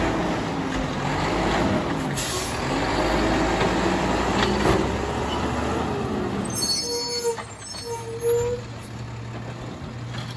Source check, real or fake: real